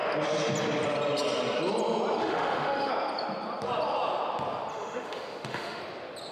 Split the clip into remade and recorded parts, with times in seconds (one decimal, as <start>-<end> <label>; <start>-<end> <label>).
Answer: 0.0-2.2 recorded; 2.2-2.9 remade; 2.9-4.7 recorded; 4.7-5.8 remade; 5.8-6.3 recorded